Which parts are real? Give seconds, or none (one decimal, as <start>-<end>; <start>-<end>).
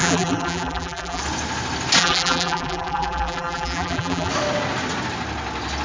1.2-2.0; 4.3-5.8